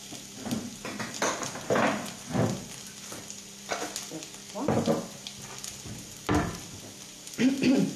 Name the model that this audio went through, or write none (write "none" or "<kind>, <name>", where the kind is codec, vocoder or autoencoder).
none